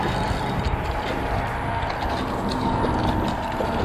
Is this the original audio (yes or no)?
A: yes